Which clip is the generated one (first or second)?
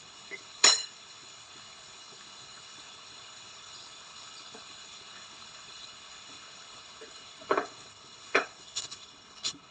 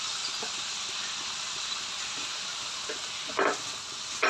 first